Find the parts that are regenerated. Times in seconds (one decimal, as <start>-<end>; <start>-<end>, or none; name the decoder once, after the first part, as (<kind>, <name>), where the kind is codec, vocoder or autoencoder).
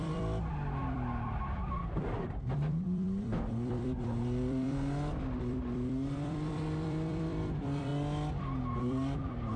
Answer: 0.0-7.9 (vocoder, BigVGAN v2); 8.8-9.6